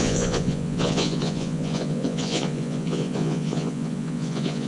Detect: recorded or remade remade